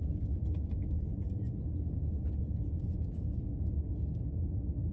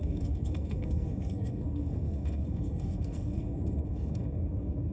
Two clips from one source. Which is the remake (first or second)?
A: second